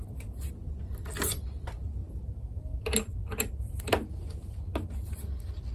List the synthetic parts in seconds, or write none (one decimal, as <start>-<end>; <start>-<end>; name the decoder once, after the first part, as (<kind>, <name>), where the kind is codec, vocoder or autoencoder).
none